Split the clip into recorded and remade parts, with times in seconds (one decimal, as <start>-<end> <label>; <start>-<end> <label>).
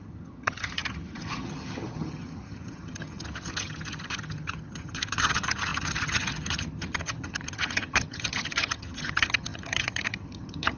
0.0-10.8 remade